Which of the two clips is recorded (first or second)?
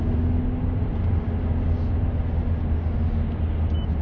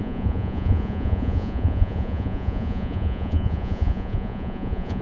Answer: first